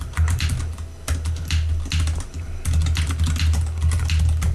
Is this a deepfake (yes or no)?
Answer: no